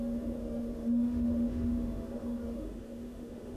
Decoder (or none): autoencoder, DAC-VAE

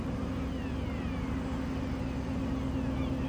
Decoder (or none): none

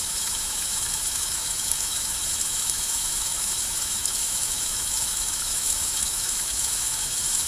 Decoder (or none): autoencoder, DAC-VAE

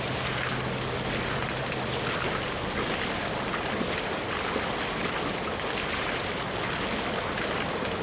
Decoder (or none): none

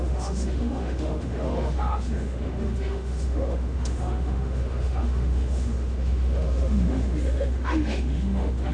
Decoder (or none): autoencoder, DAC-VAE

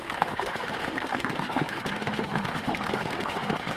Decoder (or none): autoencoder, DAC-VAE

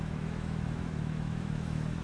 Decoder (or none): autoencoder, DAC-VAE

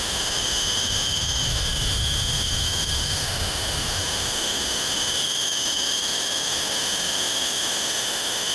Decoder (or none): autoencoder, DAC-VAE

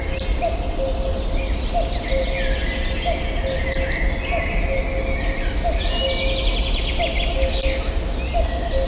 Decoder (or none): none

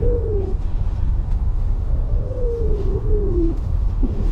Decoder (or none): autoencoder, DAC-VAE